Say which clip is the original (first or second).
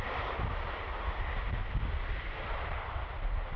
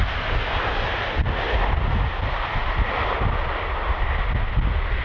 second